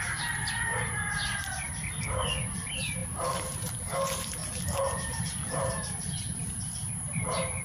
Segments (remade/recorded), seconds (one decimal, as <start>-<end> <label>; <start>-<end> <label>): 0.0-3.0 recorded; 3.0-3.8 remade; 3.8-4.4 recorded; 4.4-7.6 remade